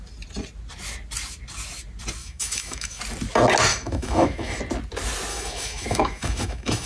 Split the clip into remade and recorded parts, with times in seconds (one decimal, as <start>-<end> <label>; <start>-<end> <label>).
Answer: 0.0-2.2 recorded; 2.2-3.0 remade; 3.0-3.7 recorded; 3.7-4.6 remade; 4.6-5.3 recorded; 5.3-6.9 remade

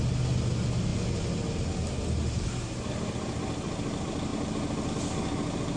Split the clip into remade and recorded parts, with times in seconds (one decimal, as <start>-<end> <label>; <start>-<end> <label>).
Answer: 0.0-5.8 recorded

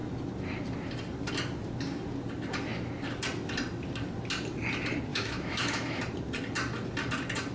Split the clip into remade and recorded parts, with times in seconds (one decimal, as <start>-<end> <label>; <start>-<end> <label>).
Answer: 0.0-5.1 recorded; 5.1-6.0 remade; 6.0-7.5 recorded

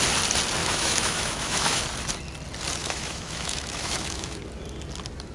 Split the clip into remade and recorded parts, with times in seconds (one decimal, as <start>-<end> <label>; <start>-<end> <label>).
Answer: 0.0-0.6 recorded; 0.6-1.8 remade; 1.8-2.8 recorded; 2.8-4.4 remade; 4.4-5.3 recorded

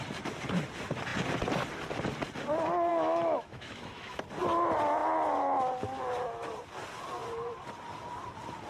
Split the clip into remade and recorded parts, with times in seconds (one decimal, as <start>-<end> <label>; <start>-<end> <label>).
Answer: 0.0-2.9 recorded; 2.9-4.2 remade; 4.2-8.7 recorded

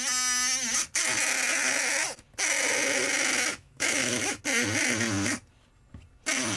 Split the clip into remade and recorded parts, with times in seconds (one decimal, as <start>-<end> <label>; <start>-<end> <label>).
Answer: 0.0-3.5 recorded; 3.5-4.4 remade; 4.4-6.6 recorded

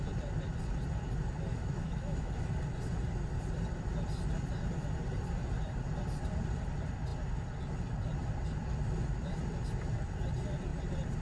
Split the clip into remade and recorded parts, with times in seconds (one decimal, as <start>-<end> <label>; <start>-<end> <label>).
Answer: 0.0-1.5 recorded; 1.5-2.3 remade; 2.3-11.2 recorded

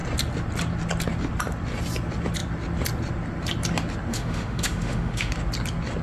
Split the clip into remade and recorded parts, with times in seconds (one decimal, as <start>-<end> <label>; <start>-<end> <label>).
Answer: 0.0-4.1 recorded; 4.1-5.3 remade; 5.3-6.0 recorded